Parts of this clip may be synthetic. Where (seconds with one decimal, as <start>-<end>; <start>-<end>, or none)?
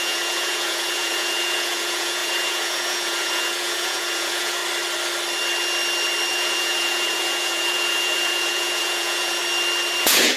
0.0-4.6; 6.3-9.4; 10.0-10.4